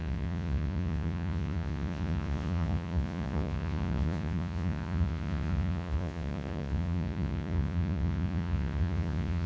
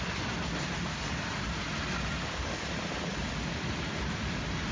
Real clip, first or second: second